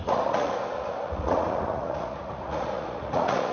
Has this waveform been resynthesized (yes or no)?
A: yes